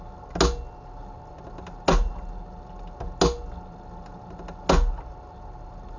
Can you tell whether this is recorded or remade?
recorded